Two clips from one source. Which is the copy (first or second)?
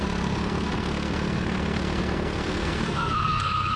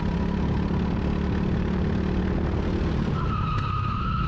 first